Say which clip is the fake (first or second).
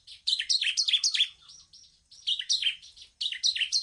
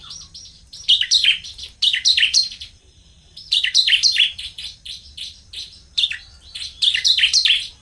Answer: second